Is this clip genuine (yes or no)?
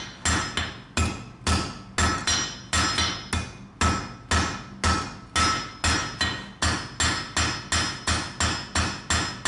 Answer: yes